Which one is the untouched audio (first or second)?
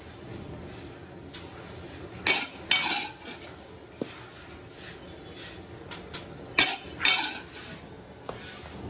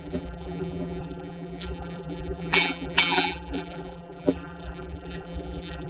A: first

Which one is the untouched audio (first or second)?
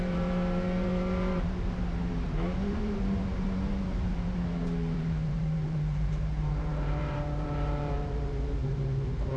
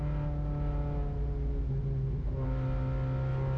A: second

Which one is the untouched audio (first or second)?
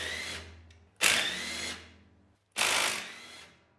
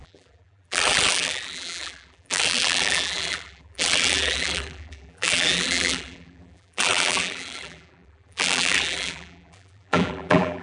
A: first